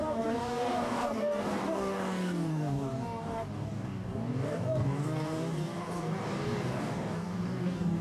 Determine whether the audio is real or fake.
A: fake